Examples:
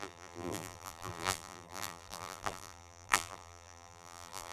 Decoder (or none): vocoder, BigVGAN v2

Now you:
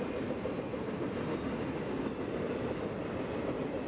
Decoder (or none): none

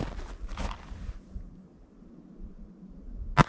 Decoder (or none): none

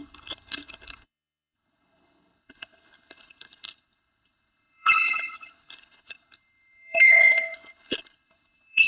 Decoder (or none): codec, HILCodec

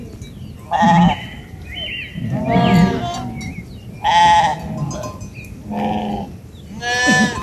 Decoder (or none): none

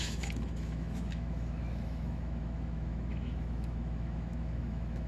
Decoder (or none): autoencoder, DAC-VAE